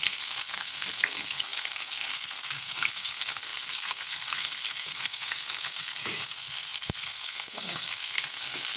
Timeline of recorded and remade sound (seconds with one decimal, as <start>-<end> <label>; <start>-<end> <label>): 0.0-8.8 remade